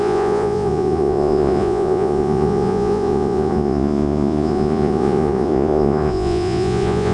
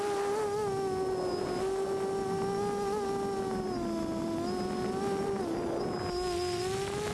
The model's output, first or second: first